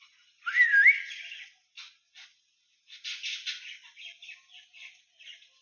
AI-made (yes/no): no